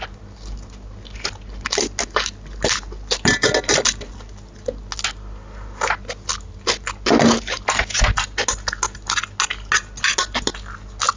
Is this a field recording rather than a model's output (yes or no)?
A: yes